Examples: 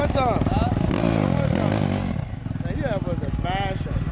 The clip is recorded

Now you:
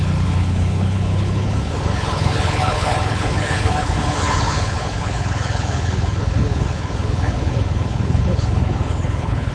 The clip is remade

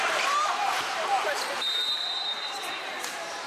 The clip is remade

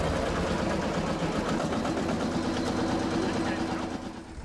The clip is recorded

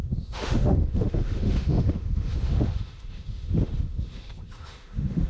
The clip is remade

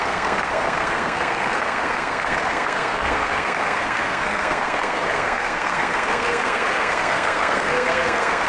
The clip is remade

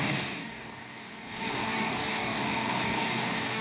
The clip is remade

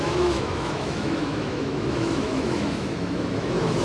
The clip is remade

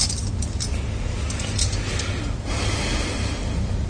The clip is recorded